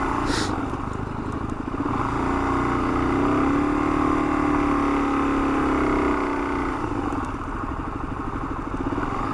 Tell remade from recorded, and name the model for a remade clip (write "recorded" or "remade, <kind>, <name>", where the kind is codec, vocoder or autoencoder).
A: recorded